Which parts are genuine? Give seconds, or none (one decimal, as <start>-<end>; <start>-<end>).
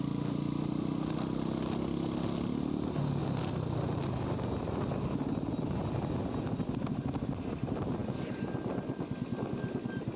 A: 0.0-10.2